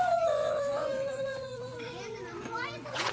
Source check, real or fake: fake